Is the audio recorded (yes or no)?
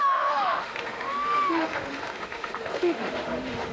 no